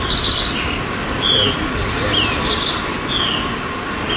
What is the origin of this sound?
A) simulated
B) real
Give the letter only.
B